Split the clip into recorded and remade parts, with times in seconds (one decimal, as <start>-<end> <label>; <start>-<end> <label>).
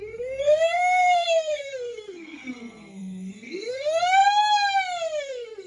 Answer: 0.0-4.2 remade; 4.2-5.2 recorded; 5.2-5.7 remade